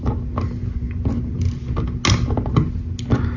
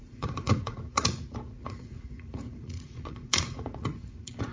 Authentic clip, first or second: first